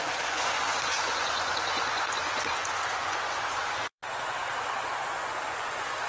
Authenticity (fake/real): fake